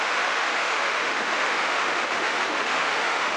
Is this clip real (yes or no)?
no